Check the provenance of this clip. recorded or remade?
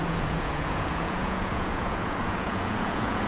remade